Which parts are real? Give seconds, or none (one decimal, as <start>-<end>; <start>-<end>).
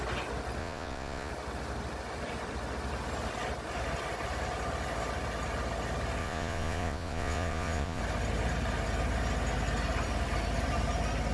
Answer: 0.0-0.6; 1.3-6.2; 8.0-11.3